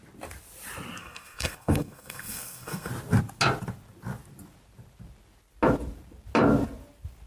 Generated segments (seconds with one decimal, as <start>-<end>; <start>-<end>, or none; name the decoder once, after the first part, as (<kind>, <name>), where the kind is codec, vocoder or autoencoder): 1.0-2.9 (codec, SNAC)